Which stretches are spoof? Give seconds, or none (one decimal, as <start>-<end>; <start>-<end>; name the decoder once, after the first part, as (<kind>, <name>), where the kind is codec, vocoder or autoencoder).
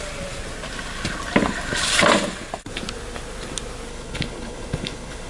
3.9-5.3 (codec, HILCodec)